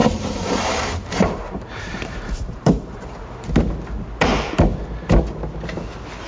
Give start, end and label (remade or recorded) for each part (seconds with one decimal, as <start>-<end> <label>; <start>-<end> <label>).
0.0-2.9 remade; 2.9-4.3 recorded; 4.3-4.8 remade; 4.8-6.3 recorded